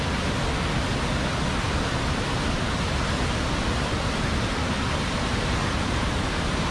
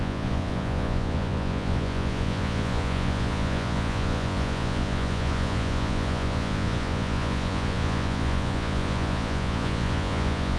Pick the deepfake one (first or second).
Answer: second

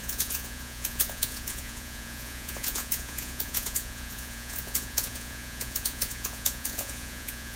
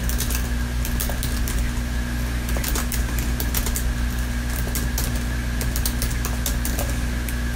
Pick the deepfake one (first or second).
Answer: first